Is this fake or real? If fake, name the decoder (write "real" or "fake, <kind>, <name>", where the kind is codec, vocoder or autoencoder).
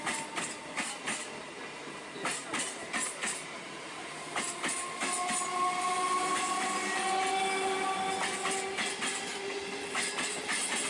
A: real